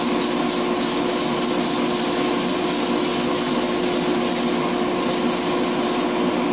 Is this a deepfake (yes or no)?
no